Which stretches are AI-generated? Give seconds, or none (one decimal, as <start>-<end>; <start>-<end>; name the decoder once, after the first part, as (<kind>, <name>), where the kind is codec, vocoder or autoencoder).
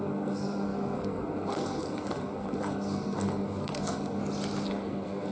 0.0-4.2 (codec, SNAC); 4.7-5.3